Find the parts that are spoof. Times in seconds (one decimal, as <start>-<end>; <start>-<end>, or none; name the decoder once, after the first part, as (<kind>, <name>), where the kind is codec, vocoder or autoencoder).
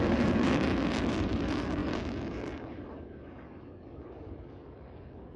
0.0-5.4 (codec, DAC)